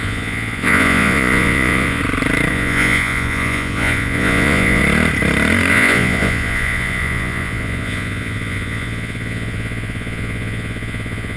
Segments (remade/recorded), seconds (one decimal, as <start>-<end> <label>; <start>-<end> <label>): 0.0-2.0 remade; 2.0-2.5 recorded; 2.5-4.8 remade; 4.8-5.7 recorded; 5.7-11.4 remade